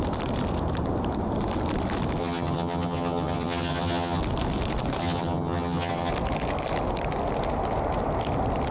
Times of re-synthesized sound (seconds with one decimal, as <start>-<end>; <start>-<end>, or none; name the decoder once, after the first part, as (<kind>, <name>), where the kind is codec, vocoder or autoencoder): 2.2-4.2 (vocoder, HiFi-GAN); 5.0-6.1